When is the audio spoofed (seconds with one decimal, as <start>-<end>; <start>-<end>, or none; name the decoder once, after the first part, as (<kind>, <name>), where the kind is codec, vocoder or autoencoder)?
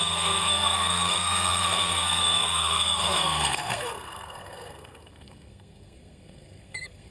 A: 0.0-7.1 (codec, SNAC)